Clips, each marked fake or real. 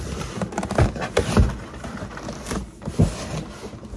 real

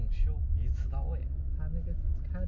real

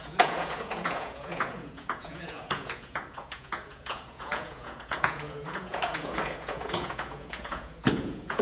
fake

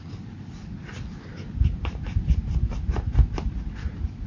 real